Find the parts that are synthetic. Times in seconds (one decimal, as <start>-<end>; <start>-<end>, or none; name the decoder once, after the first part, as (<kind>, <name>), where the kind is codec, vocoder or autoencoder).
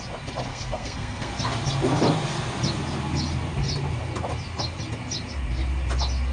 0.5-1.3 (codec, SNAC)